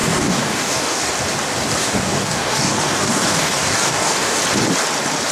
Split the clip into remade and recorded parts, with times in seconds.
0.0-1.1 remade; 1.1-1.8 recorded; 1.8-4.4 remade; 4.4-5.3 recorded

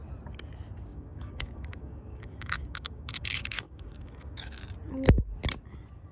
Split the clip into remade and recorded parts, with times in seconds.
0.0-0.9 recorded; 0.9-4.6 remade; 4.6-6.1 recorded

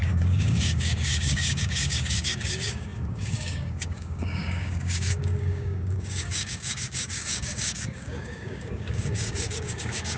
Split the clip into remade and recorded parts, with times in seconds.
0.0-10.2 remade

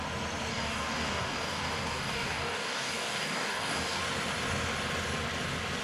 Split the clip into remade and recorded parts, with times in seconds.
0.0-0.5 recorded; 0.5-4.0 remade; 4.0-5.8 recorded

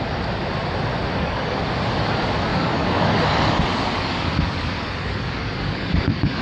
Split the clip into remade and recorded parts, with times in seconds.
0.0-1.1 recorded; 1.1-1.6 remade; 1.6-2.5 recorded; 2.5-6.4 remade

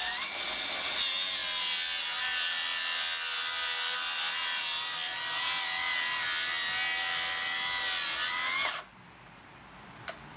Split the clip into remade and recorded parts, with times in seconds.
0.0-10.4 recorded

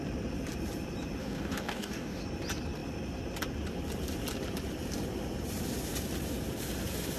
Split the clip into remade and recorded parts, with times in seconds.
0.0-1.2 recorded; 1.2-2.2 remade; 2.2-7.2 recorded